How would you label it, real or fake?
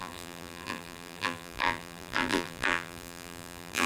fake